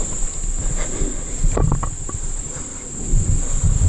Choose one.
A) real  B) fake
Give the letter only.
A